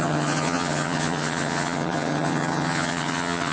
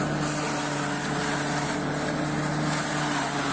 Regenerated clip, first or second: first